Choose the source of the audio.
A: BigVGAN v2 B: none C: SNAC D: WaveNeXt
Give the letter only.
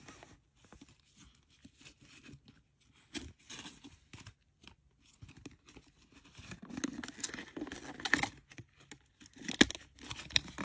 B